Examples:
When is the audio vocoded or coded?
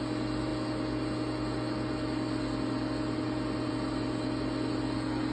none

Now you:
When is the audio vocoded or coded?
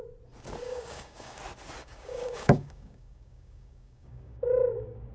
0.6-1.4 (codec, DAC); 1.8-5.1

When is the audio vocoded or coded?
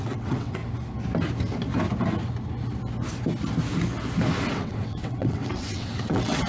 0.0-0.6 (vocoder, WaveNeXt); 4.5-6.5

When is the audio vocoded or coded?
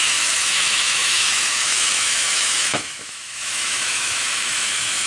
0.0-5.1 (autoencoder, DAC-VAE)